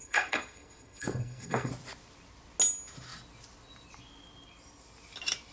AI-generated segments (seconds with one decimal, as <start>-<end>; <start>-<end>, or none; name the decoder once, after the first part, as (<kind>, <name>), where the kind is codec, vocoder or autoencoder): 0.0-1.7 (codec, SNAC)